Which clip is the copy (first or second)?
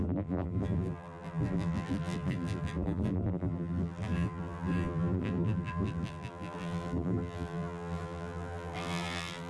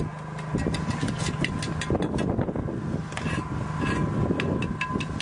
first